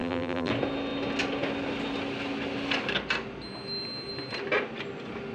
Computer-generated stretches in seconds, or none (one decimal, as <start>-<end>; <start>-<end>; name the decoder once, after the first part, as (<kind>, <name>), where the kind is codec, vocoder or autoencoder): 0.0-0.5 (vocoder, BigVGAN v2)